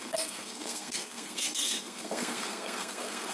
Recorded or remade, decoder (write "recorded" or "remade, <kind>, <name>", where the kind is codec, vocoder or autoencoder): remade, codec, SNAC